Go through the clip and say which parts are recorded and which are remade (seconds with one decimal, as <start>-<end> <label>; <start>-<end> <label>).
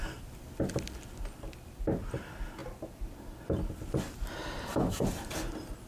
0.0-5.9 recorded